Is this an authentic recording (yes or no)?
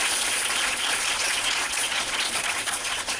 no